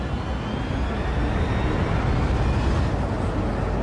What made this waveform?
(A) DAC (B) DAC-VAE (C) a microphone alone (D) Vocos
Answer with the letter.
C